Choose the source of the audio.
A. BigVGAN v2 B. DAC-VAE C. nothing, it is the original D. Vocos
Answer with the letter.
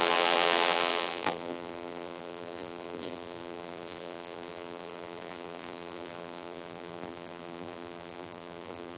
A